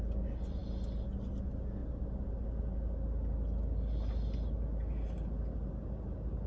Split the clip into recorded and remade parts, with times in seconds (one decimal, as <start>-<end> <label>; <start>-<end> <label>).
0.0-6.5 recorded